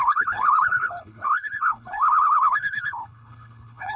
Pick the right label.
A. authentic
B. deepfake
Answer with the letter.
B